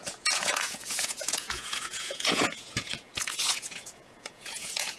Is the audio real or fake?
fake